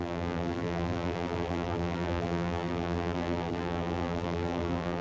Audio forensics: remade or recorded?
remade